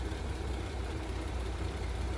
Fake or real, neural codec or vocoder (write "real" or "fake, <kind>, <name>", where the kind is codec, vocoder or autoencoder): fake, vocoder, BigVGAN v2